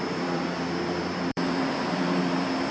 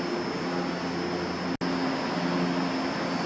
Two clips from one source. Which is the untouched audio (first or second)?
second